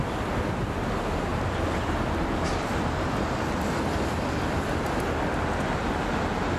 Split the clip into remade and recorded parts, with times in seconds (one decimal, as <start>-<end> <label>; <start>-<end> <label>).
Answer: 0.0-1.3 recorded; 1.3-4.2 remade; 4.2-6.6 recorded